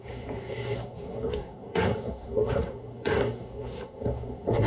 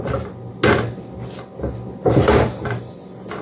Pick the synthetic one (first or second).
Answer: first